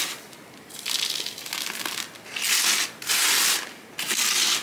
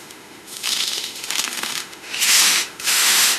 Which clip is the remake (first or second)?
second